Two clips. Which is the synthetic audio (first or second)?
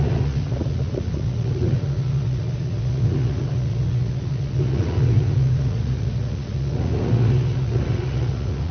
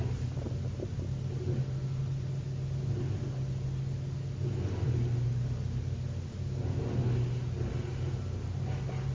first